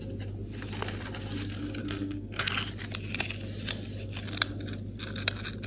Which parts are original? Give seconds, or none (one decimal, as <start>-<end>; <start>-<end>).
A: 0.0-1.8; 2.5-5.7